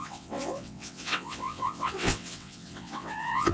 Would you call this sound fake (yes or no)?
yes